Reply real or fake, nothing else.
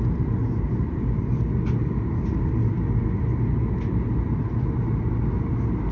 real